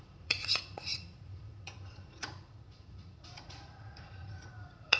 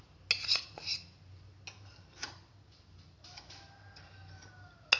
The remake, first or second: first